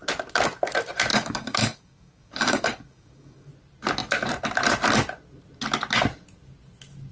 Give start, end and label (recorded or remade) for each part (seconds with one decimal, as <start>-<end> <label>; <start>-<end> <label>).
0.0-1.1 recorded; 1.1-3.5 remade; 3.5-7.1 recorded